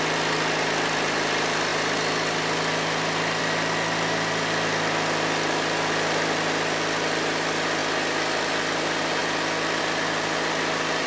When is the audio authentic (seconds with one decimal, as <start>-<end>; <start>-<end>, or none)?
0.0-11.1